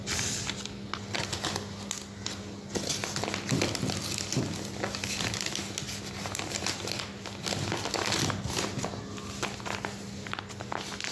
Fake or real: real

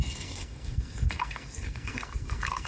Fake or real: fake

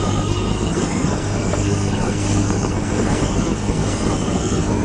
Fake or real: fake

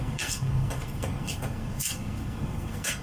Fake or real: fake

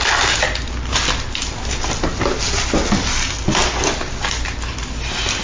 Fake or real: real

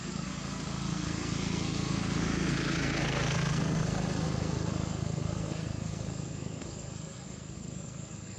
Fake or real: fake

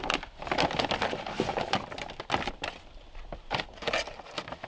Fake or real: real